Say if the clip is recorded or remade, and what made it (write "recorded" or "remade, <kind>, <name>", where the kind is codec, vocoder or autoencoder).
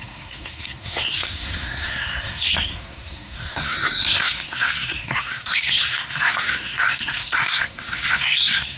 remade, codec, SNAC